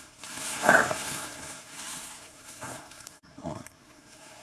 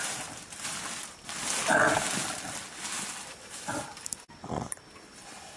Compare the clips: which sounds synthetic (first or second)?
first